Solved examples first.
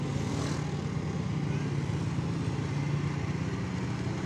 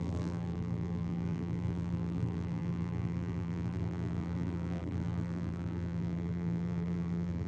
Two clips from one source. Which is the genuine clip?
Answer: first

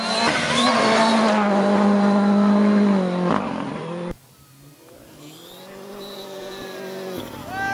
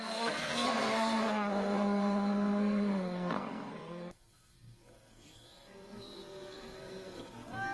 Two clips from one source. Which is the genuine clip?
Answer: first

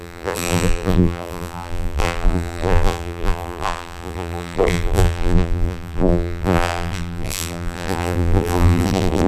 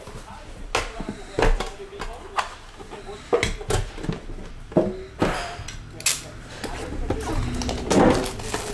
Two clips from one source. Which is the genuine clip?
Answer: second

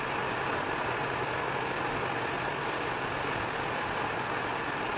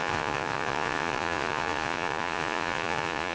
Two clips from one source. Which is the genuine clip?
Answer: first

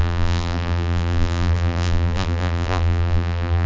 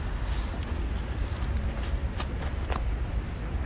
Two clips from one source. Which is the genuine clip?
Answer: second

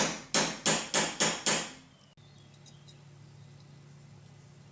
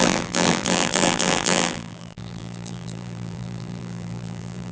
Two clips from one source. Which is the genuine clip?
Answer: first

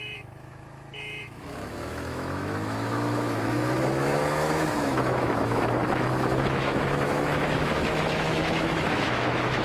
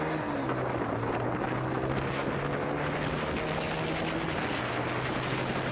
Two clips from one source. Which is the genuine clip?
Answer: second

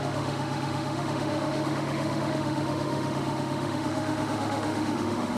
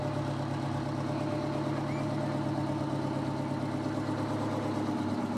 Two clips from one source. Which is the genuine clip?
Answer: second